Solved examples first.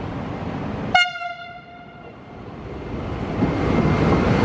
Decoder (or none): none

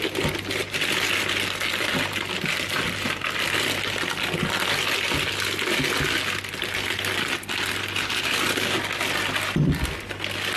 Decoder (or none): none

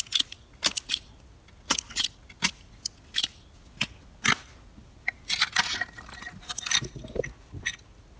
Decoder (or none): none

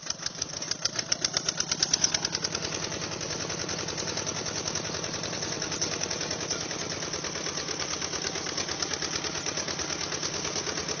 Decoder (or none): none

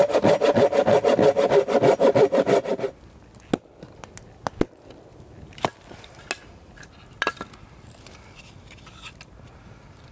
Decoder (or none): none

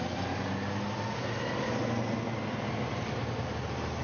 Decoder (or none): none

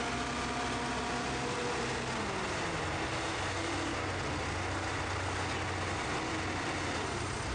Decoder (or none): none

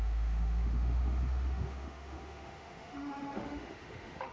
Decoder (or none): autoencoder, DAC-VAE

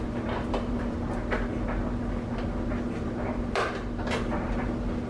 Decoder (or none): none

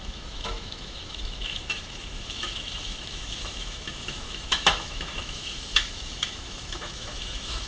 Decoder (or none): autoencoder, DAC-VAE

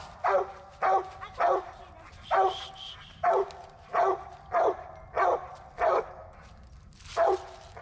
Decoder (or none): none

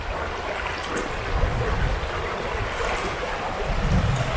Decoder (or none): none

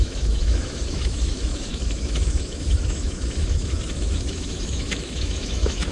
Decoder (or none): autoencoder, DAC-VAE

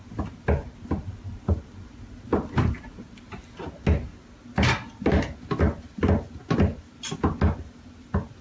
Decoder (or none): none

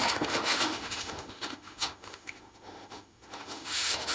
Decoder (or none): autoencoder, DAC-VAE